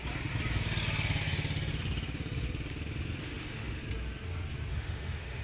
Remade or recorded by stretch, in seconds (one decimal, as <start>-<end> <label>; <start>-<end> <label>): 0.0-3.2 recorded; 3.2-3.8 remade; 3.8-4.7 recorded; 4.7-5.4 remade